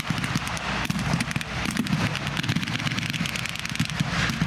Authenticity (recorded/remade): recorded